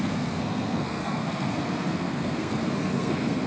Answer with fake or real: fake